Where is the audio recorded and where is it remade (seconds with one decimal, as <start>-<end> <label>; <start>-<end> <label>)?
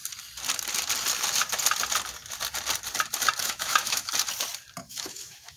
0.0-3.4 recorded; 3.4-4.1 remade; 4.1-4.8 recorded; 4.8-5.6 remade